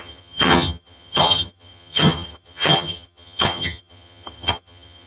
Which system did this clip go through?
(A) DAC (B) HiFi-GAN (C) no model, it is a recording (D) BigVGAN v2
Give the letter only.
B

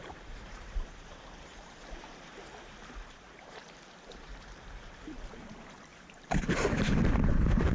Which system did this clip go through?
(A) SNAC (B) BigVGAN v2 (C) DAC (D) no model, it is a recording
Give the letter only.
B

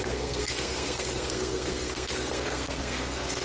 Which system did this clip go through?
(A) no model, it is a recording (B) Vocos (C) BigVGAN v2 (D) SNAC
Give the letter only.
D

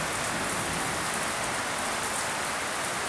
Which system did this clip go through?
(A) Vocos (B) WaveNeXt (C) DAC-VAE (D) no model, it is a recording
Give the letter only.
D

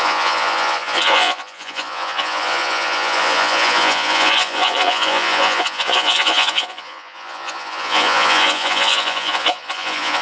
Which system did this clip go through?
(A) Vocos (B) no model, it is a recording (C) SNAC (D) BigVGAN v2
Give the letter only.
A